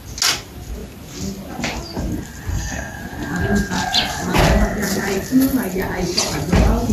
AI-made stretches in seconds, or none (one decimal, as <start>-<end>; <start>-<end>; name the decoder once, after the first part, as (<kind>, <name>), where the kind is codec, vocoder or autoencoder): 2.5-3.0 (codec, SNAC)